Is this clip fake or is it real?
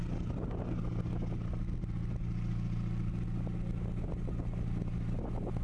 real